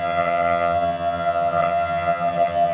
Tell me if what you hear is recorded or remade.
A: remade